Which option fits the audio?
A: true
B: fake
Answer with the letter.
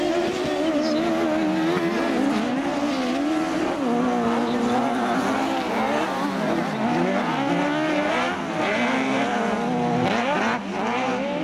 A